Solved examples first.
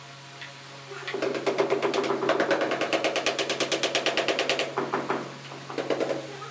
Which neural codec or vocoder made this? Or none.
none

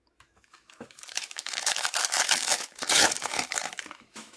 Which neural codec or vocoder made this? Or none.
autoencoder, DAC-VAE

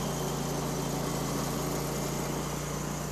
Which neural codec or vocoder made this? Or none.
none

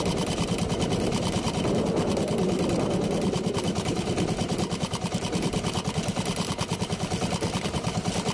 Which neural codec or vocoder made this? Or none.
none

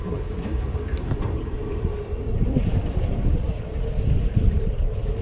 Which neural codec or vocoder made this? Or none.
vocoder, BigVGAN v2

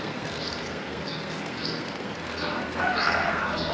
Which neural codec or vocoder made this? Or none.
codec, SNAC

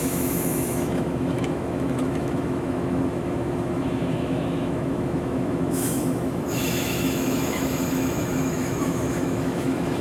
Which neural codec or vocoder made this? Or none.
autoencoder, DAC-VAE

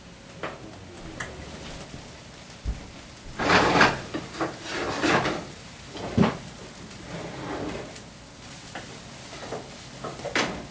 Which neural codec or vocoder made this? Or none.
none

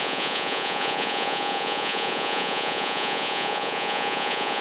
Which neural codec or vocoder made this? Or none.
vocoder, Vocos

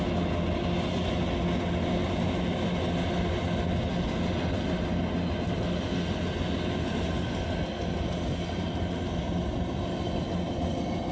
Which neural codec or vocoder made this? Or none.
none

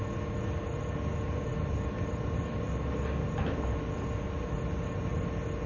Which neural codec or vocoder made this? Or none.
none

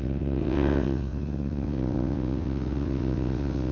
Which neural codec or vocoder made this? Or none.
vocoder, WaveNeXt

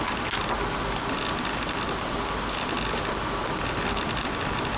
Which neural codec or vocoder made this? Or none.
none